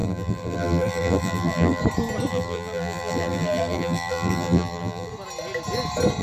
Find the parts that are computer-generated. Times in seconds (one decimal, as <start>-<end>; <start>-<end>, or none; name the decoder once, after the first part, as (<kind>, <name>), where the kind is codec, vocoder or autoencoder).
0.0-1.8 (vocoder, BigVGAN v2); 2.3-5.1